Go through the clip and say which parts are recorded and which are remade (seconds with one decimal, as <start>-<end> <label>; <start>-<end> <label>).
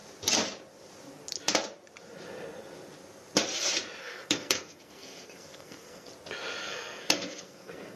0.0-4.0 recorded; 4.0-6.1 remade; 6.1-6.6 recorded; 6.6-8.0 remade